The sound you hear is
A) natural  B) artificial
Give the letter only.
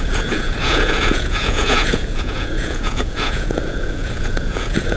B